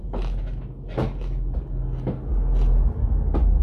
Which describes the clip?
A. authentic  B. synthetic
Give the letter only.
A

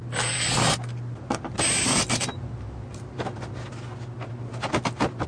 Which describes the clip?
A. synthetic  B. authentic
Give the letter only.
B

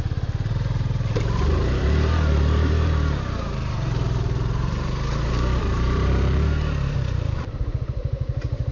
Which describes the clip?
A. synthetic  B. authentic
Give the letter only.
A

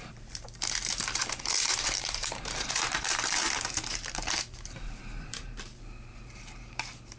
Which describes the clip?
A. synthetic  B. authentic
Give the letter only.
A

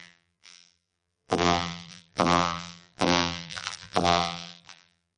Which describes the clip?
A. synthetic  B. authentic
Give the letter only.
A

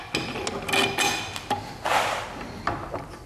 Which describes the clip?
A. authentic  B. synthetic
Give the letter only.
A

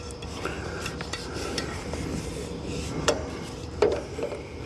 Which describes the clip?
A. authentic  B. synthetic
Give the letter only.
B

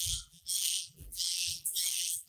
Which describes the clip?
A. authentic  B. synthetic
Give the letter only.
B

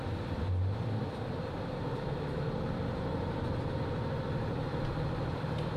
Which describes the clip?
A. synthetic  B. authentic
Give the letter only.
A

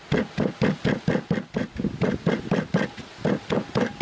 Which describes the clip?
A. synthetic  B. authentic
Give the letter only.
B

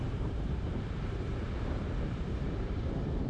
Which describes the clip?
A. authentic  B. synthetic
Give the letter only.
B